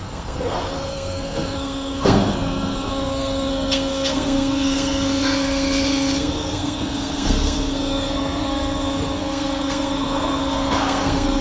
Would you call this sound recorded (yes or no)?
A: no